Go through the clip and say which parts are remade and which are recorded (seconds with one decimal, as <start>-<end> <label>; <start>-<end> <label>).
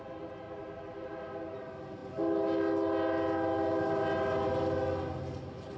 0.0-5.8 recorded